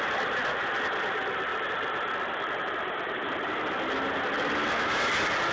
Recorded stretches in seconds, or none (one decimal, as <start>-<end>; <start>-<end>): 0.0-5.5